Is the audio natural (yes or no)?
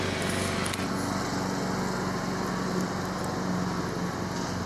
yes